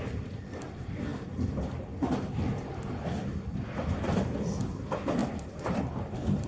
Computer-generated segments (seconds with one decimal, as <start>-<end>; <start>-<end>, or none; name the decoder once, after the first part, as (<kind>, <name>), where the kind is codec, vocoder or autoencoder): none